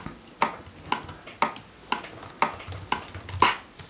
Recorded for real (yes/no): yes